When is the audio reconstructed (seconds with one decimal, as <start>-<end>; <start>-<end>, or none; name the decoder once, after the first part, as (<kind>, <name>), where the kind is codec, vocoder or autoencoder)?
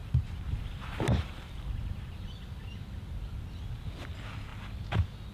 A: 0.0-2.7 (vocoder, BigVGAN v2)